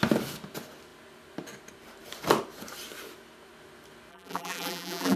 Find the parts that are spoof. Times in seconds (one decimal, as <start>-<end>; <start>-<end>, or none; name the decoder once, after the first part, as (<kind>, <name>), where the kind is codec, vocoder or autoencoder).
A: 4.1-5.2 (vocoder, BigVGAN v2)